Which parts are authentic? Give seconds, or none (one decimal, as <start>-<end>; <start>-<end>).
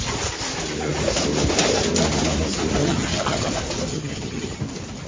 0.0-2.8; 3.5-3.9; 4.6-5.1